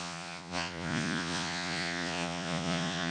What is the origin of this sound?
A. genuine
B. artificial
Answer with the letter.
B